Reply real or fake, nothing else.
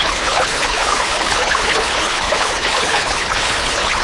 fake